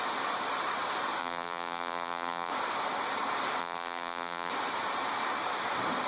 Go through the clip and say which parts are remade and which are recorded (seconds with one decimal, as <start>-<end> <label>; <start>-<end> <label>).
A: 0.0-1.2 recorded; 1.2-2.5 remade; 2.5-3.6 recorded; 3.6-4.5 remade; 4.5-6.1 recorded